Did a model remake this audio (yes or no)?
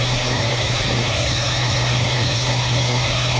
yes